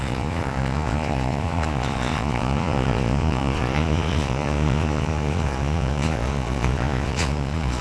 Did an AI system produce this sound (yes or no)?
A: yes